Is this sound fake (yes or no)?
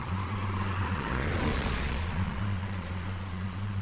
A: yes